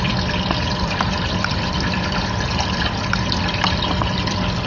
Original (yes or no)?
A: no